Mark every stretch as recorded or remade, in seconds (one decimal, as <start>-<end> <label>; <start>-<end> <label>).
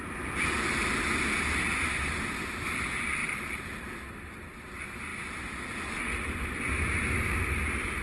0.0-8.0 recorded